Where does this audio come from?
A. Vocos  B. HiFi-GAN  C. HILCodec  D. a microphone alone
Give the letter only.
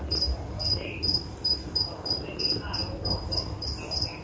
D